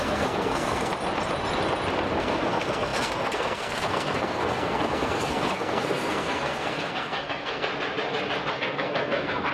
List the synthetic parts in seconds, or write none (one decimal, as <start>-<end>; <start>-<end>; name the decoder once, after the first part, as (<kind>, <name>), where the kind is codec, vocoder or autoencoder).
0.0-0.9 (codec, SNAC); 2.2-7.7; 8.5-9.5